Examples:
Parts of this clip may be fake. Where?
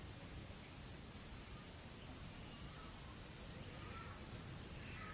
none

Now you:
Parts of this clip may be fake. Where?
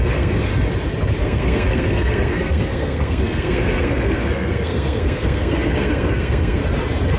0.0-0.5 (codec, SNAC); 1.2-6.6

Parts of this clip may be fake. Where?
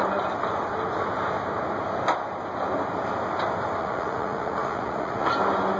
3.8-5.3 (vocoder, Vocos)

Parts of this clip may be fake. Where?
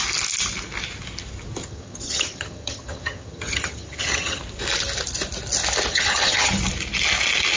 1.6-4.4 (vocoder, HiFi-GAN); 5.9-6.6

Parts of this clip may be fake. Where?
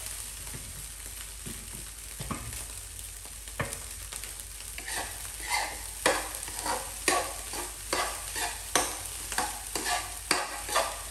none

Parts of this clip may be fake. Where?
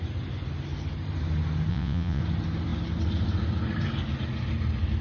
1.7-2.2 (vocoder, WaveNeXt)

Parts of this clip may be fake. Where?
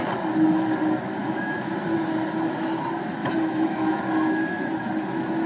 1.2-1.7 (autoencoder, DAC-VAE); 3.2-4.0